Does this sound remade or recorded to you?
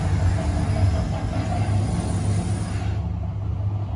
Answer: recorded